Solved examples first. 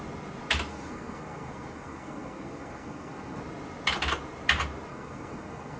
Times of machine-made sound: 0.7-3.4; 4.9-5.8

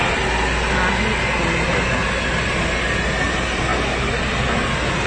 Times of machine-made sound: none

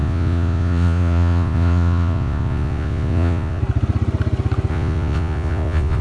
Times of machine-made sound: 0.0-3.6; 4.7-6.0

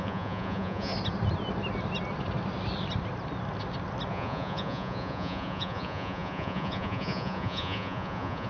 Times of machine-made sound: 0.0-0.9; 4.1-8.5